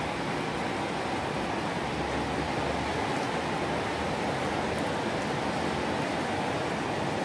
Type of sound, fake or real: real